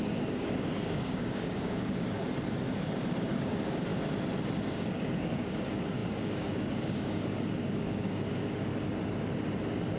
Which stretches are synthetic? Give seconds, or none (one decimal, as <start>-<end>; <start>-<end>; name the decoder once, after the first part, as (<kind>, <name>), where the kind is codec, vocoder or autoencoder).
0.0-2.2 (codec, DAC); 3.2-3.9; 4.6-8.7